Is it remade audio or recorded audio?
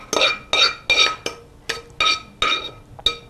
recorded